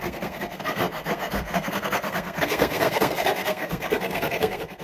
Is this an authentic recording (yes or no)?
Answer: no